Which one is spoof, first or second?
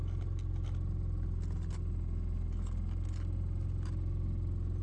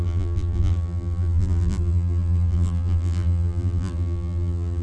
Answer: second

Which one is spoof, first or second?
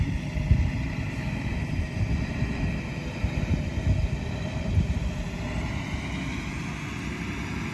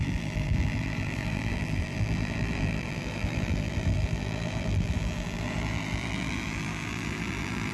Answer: second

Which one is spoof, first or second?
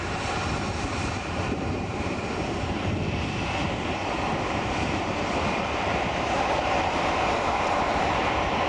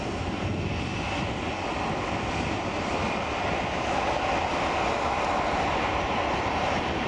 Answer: first